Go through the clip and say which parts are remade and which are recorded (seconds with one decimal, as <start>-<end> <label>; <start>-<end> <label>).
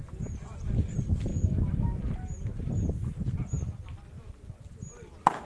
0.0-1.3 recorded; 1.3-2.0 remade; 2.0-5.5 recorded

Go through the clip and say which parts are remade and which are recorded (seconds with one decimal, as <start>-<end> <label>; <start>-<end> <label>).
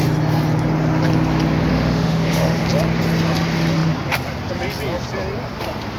0.0-1.7 recorded; 1.7-2.6 remade; 2.6-6.0 recorded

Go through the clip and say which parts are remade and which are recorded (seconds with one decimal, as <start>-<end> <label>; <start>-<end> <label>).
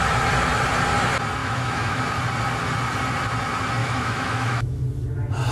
0.0-1.4 recorded; 1.4-2.0 remade; 2.0-3.8 recorded; 3.8-4.8 remade; 4.8-5.5 recorded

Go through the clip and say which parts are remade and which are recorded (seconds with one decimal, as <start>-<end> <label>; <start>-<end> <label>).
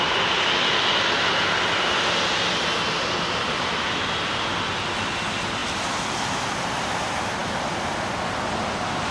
0.0-9.1 recorded